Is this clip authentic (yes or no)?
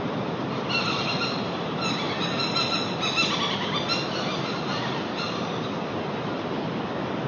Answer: yes